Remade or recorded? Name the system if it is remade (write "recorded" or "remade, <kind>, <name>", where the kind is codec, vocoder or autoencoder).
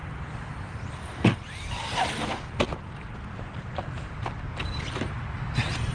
recorded